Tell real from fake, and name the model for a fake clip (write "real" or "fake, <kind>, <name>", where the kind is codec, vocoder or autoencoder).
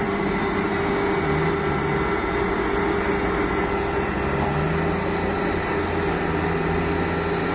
real